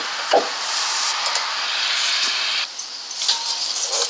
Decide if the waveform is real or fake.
real